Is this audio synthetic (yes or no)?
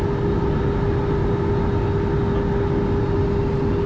no